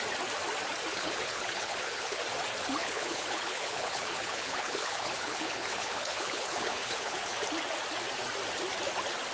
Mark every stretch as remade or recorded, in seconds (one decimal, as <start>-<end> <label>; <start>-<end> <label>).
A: 0.0-0.9 recorded; 0.9-2.2 remade; 2.2-2.8 recorded; 2.8-7.4 remade; 7.4-9.3 recorded